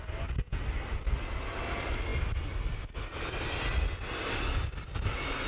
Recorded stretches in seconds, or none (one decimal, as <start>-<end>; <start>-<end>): 0.0-5.5

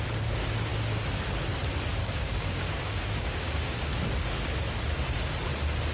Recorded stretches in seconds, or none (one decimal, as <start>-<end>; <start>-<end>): 0.0-2.0; 3.8-5.9

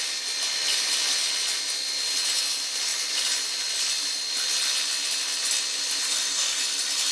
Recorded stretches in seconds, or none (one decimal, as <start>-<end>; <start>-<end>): 0.0-6.1; 6.6-7.1

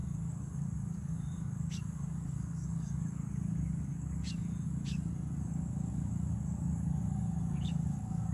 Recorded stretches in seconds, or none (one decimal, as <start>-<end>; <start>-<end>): none

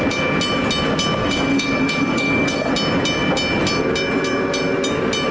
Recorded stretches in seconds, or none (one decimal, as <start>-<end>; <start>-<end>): 0.0-1.2; 2.7-5.3

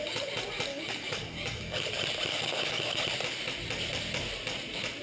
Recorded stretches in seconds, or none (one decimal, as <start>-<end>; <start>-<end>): 0.0-0.7; 1.9-2.3; 3.0-5.0

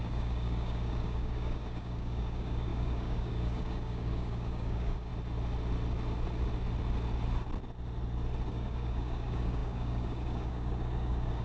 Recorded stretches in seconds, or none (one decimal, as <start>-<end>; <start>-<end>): 5.1-8.5

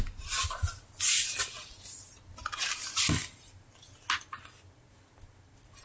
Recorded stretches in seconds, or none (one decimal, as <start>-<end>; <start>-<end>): 0.0-5.8